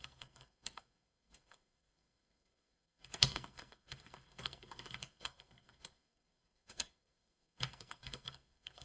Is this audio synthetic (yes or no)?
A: yes